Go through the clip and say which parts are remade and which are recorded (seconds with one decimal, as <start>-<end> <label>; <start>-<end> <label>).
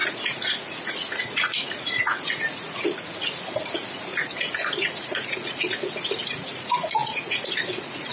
0.0-8.1 remade